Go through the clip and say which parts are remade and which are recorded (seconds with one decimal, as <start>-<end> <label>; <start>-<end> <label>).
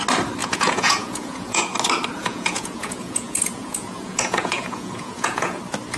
0.0-0.4 recorded; 0.4-1.6 remade; 1.6-2.2 recorded; 2.2-5.6 remade; 5.6-6.0 recorded